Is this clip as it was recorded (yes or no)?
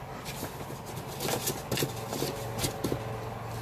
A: yes